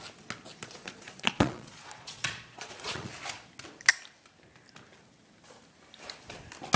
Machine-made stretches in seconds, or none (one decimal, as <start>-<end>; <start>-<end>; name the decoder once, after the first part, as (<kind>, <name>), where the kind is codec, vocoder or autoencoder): 0.5-3.1 (vocoder, Vocos)